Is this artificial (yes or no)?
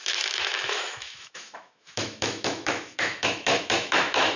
yes